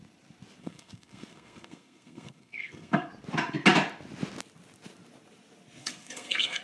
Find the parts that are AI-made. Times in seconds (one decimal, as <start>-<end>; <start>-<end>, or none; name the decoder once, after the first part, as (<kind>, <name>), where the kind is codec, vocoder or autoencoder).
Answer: 0.6-3.1 (codec, SNAC); 5.8-6.6